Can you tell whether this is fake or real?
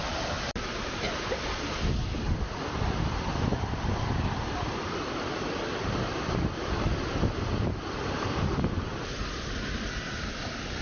real